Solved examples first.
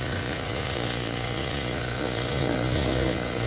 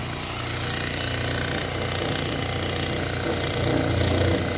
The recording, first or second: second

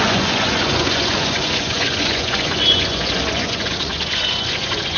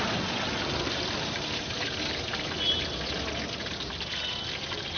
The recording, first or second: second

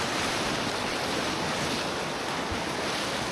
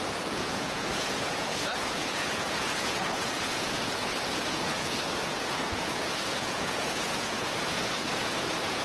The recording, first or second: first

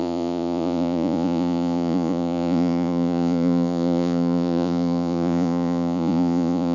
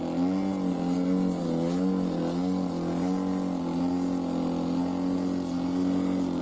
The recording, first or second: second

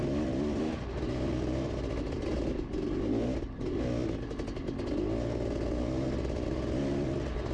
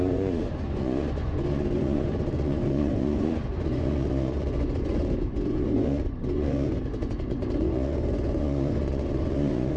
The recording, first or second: first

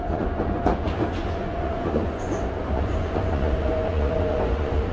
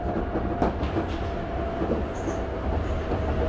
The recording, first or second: second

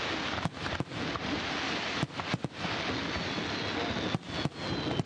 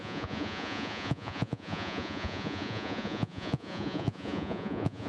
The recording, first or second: first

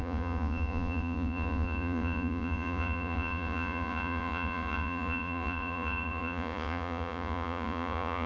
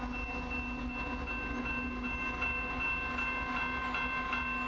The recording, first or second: second